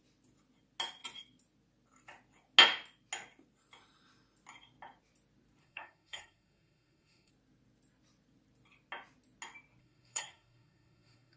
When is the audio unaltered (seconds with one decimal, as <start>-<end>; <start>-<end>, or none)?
0.0-5.6; 7.3-9.8